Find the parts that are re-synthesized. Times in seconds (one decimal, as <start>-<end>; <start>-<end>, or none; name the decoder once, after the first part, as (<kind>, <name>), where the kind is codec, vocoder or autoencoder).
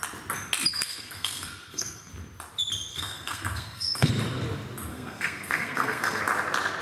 0.7-2.1 (codec, SNAC); 2.9-4.1; 4.9-6.2